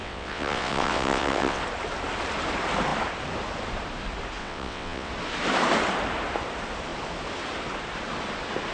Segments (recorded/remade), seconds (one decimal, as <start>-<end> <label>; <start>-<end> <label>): 0.0-1.6 remade; 1.6-4.4 recorded; 4.4-5.1 remade; 5.1-8.7 recorded